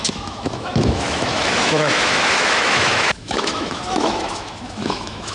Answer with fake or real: fake